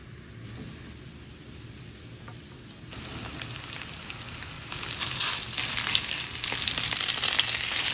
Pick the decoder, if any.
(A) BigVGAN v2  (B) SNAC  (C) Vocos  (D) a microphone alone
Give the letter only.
D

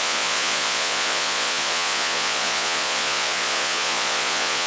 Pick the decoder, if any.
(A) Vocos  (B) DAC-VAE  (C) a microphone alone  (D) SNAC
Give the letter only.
A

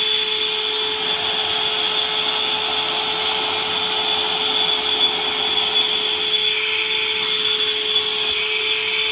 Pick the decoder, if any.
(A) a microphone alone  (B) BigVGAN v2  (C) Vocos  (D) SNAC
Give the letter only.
A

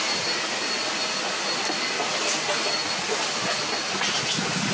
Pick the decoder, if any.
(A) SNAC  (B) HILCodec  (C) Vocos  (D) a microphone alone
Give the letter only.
D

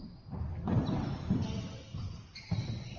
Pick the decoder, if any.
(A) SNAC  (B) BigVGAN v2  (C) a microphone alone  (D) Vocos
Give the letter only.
C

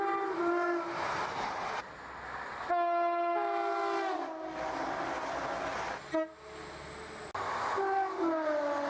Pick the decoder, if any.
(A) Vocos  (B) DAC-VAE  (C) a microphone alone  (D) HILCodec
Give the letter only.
C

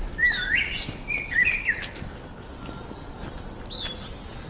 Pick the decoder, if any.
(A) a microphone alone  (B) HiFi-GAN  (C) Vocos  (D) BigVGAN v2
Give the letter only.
A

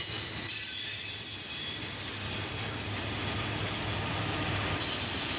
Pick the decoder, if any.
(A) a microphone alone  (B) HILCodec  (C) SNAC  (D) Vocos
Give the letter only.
A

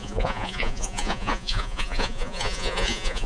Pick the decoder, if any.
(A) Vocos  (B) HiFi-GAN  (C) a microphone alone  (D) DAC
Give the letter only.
A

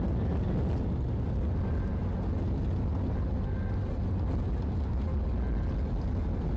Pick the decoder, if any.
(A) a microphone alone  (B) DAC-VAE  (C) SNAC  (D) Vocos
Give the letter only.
A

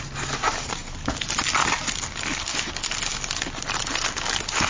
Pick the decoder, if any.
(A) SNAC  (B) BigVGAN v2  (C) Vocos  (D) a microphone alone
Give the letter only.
D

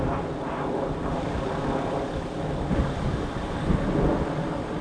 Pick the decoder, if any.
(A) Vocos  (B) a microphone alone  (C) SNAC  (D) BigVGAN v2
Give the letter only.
B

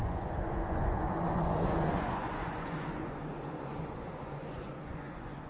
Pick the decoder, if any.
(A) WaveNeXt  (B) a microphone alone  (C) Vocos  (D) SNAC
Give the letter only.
C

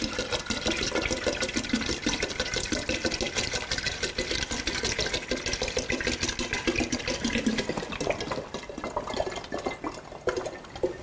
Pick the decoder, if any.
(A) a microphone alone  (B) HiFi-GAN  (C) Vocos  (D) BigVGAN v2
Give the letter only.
A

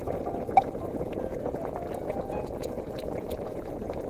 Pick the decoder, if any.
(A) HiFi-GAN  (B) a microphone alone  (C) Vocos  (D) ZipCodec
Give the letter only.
C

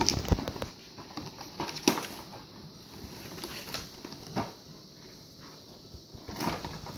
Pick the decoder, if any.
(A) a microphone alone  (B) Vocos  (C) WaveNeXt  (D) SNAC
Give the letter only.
A